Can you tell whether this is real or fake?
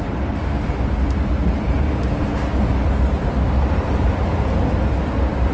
real